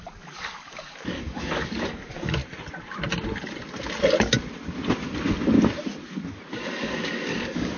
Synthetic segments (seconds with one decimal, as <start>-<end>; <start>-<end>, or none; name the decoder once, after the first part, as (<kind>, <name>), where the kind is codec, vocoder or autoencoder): 0.0-2.4 (codec, DAC); 6.5-7.8